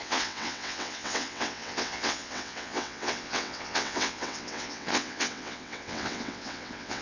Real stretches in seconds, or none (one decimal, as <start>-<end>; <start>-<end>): none